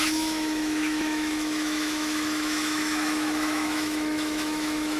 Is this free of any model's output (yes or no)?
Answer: no